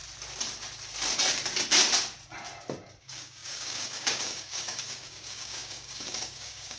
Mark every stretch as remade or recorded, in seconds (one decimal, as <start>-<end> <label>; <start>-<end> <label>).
0.0-3.0 recorded; 3.0-6.8 remade